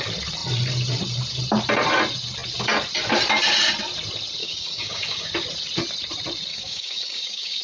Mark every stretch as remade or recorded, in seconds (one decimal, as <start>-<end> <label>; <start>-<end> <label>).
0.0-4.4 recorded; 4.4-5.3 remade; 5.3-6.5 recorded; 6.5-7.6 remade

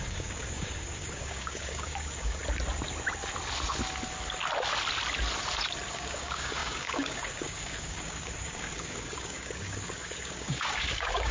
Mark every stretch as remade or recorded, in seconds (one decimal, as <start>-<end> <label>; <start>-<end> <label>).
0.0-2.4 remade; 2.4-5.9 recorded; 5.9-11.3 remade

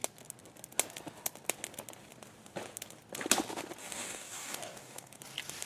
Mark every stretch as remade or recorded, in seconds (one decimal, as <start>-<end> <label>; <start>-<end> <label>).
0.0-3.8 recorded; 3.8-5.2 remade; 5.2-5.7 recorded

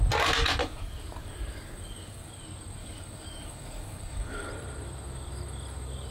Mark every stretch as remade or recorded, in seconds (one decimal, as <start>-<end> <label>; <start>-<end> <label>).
0.0-0.6 recorded; 0.6-2.3 remade; 2.3-2.8 recorded; 2.8-4.5 remade; 4.5-6.1 recorded